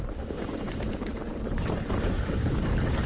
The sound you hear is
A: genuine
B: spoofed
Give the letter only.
B